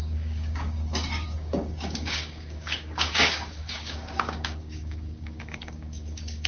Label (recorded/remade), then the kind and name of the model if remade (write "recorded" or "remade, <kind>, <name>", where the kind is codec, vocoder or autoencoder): remade, codec, DAC